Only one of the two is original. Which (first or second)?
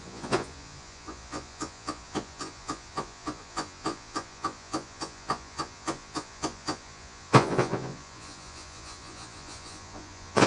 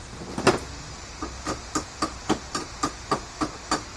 second